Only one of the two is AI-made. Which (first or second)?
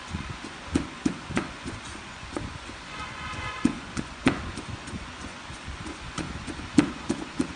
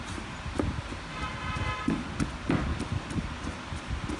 first